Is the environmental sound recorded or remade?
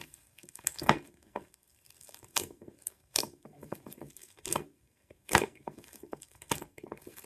remade